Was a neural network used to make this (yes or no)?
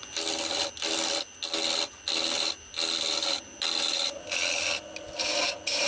no